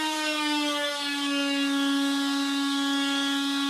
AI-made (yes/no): yes